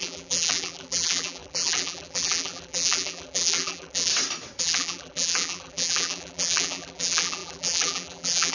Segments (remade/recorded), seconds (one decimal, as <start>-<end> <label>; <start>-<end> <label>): 0.0-4.1 remade; 4.1-4.6 recorded; 4.6-8.5 remade